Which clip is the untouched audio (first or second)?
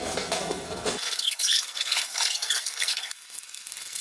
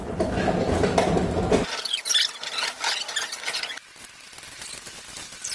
second